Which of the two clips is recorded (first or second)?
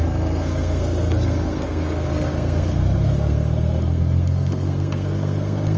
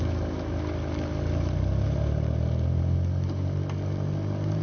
second